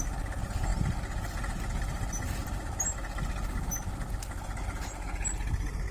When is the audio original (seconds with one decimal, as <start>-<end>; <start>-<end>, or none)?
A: 0.0-5.9